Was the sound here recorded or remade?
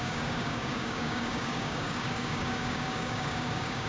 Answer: remade